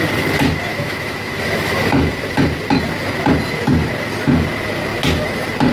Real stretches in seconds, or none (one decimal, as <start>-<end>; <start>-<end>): 0.0-0.7; 2.1-5.7